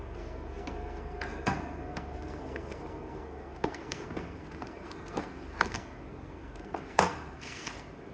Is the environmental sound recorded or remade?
remade